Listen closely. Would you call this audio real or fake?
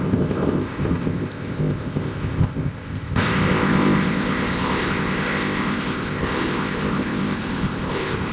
fake